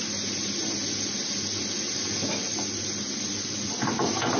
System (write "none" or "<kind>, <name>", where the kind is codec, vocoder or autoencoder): none